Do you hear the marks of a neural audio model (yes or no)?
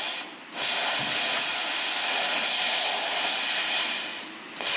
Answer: no